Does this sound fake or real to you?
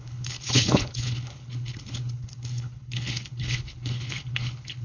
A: fake